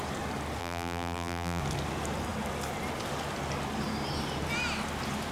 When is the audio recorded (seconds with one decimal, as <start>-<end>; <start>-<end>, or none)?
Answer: 0.0-0.6; 1.6-5.3